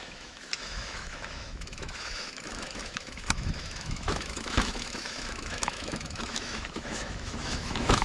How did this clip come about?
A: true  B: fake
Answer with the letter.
B